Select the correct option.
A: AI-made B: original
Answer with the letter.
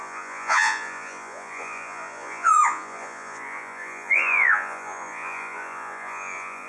A